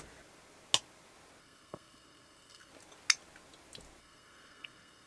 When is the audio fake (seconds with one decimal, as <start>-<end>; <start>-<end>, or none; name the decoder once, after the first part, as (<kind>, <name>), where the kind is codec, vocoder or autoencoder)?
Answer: 1.4-2.7 (codec, SNAC); 4.0-5.1